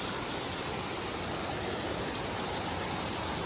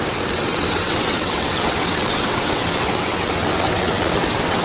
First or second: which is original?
first